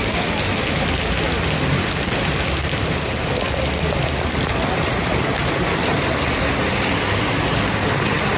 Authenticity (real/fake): real